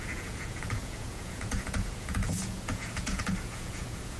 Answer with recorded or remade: remade